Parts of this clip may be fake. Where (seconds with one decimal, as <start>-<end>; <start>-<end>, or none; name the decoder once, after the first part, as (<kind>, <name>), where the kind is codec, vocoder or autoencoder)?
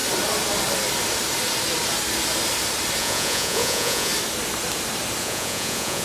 3.0-4.1 (vocoder, Vocos); 5.2-6.0